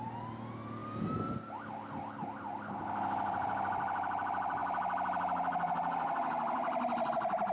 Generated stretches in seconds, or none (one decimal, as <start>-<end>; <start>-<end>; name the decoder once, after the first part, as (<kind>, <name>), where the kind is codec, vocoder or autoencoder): none